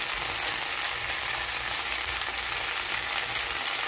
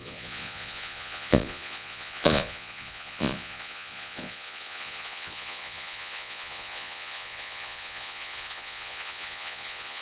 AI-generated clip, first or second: second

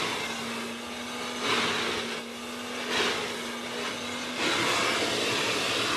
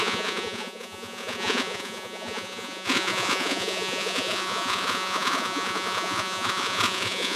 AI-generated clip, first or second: second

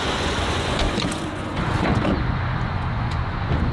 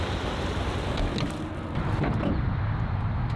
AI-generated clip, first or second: first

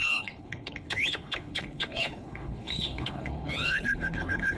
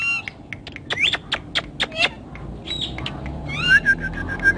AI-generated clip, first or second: first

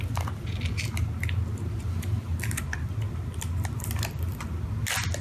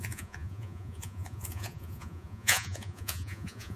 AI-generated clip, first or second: second